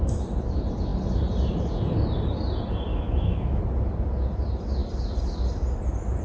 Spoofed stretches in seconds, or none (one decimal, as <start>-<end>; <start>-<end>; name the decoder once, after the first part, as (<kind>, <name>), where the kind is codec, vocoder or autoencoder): 2.9-3.6 (autoencoder, DAC-VAE)